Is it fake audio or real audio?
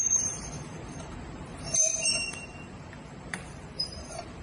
fake